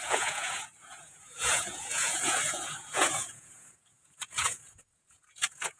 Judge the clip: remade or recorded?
remade